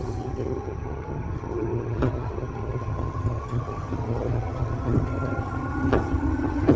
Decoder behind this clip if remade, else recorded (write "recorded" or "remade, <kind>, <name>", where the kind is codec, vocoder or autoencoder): remade, vocoder, HiFi-GAN